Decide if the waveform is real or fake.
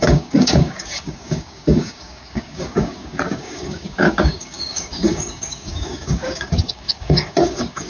fake